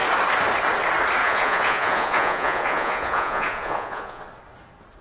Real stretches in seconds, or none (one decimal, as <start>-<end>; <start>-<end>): 0.0-1.2; 4.2-5.0